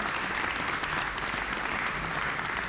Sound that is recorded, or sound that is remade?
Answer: recorded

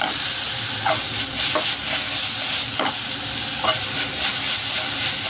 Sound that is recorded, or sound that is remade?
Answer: recorded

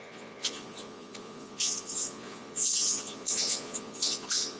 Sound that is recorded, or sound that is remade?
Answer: remade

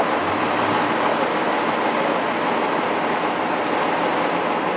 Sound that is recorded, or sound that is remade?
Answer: recorded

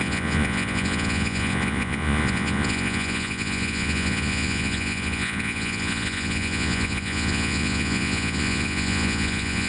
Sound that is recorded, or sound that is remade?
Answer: remade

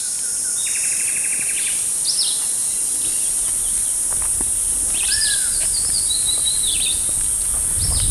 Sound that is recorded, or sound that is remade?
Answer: recorded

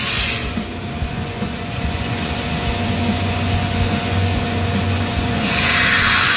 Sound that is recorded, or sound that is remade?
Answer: remade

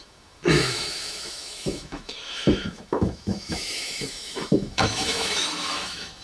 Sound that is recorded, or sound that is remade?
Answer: remade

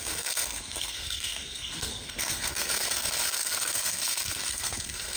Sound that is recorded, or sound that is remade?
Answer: remade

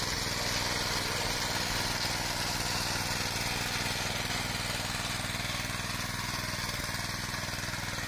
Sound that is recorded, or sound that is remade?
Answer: recorded